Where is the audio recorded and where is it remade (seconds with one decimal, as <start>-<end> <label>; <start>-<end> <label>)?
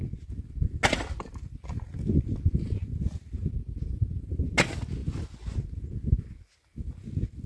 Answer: 0.0-7.5 recorded